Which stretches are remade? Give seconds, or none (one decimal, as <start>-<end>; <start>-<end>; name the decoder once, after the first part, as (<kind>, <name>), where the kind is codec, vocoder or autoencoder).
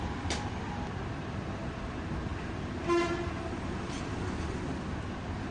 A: none